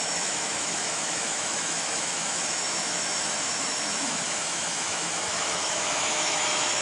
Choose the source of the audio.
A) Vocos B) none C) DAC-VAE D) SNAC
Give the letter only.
C